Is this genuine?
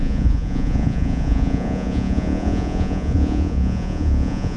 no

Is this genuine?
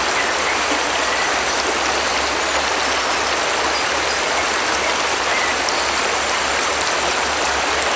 yes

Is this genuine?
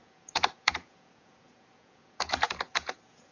no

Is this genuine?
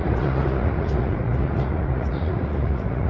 no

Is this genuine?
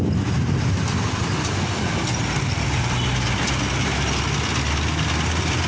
yes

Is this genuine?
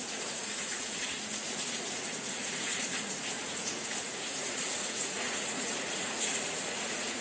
no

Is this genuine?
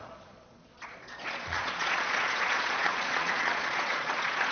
no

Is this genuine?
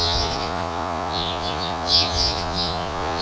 no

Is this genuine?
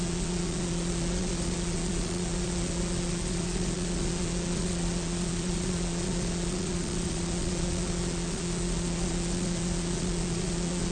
no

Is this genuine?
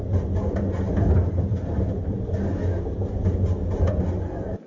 yes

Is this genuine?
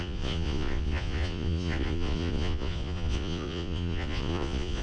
no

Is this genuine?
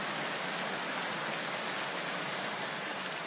yes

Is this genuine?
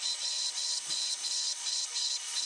no